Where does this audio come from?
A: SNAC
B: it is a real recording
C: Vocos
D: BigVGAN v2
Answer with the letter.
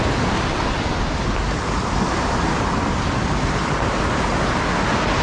B